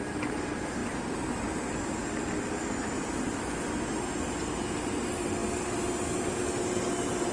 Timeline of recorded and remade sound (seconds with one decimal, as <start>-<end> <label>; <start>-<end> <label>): 0.0-7.3 recorded

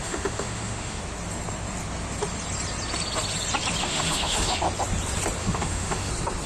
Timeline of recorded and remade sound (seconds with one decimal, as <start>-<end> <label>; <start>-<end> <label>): 0.0-1.0 remade; 1.0-3.8 recorded; 3.8-4.6 remade; 4.6-5.4 recorded; 5.4-6.1 remade; 6.1-6.5 recorded

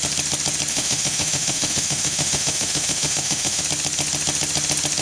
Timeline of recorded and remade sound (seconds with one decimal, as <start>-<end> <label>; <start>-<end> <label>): 0.0-0.7 recorded; 0.7-3.6 remade; 3.6-5.0 recorded

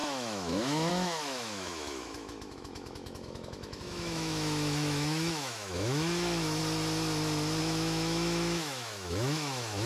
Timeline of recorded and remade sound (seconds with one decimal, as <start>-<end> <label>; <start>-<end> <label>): 0.0-6.6 remade; 6.6-7.6 recorded; 7.6-9.9 remade

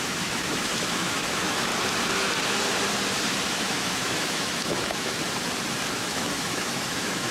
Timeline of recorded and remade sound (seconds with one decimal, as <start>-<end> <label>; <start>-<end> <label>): 0.0-1.7 remade; 1.7-3.5 recorded; 3.5-5.2 remade; 5.2-5.9 recorded; 5.9-7.3 remade